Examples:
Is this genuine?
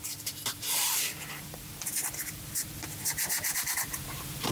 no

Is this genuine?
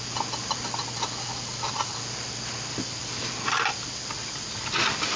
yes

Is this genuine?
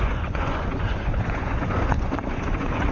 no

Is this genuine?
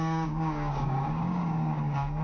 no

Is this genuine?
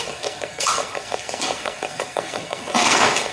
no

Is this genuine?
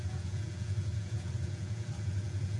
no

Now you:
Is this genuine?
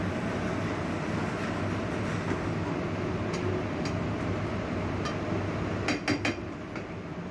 yes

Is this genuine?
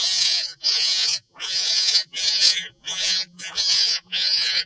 no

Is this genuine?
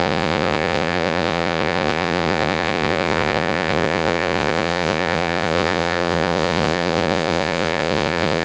no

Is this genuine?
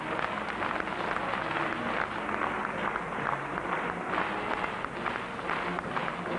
yes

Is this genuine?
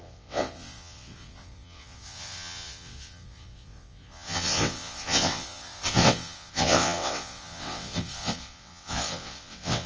no